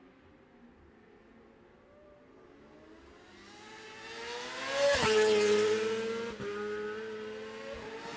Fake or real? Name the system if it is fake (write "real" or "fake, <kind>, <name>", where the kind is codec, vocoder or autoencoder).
real